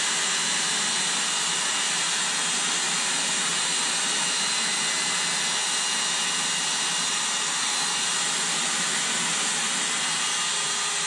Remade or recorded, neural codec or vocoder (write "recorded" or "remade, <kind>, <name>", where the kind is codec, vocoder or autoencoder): recorded